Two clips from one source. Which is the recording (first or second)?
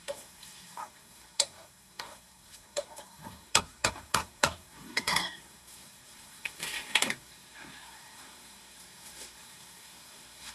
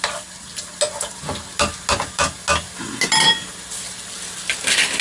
second